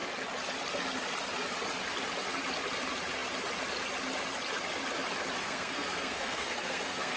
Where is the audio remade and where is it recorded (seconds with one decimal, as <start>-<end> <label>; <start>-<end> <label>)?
0.0-5.4 recorded; 5.4-7.2 remade

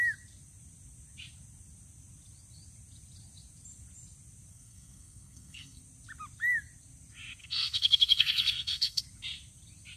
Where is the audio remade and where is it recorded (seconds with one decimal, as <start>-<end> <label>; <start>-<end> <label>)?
0.0-4.5 recorded; 4.5-5.8 remade; 5.8-7.4 recorded; 7.4-9.0 remade; 9.0-10.0 recorded

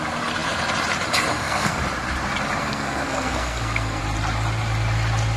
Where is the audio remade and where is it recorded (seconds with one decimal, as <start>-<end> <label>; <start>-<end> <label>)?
0.0-1.3 recorded; 1.3-1.8 remade; 1.8-2.6 recorded; 2.6-4.0 remade; 4.0-5.4 recorded

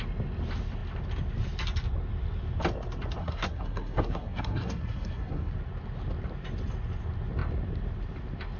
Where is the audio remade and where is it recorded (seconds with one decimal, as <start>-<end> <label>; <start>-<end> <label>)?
0.0-3.2 recorded; 3.2-5.5 remade; 5.5-8.6 recorded

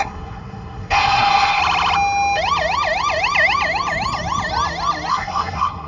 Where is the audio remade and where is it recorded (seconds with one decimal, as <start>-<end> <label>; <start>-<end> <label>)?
0.0-1.6 remade; 1.6-5.1 recorded; 5.1-5.9 remade

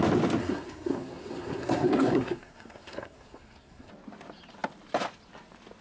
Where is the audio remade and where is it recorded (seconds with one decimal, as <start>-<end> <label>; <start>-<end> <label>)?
0.0-0.4 recorded; 0.4-3.9 remade; 3.9-5.8 recorded